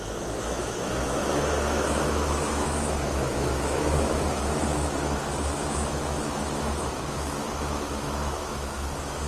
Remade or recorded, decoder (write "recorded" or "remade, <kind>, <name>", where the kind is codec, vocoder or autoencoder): remade, autoencoder, DAC-VAE